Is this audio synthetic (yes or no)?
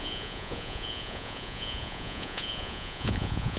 yes